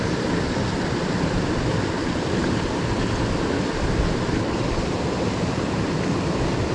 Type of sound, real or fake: real